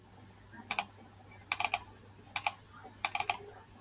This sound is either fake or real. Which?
real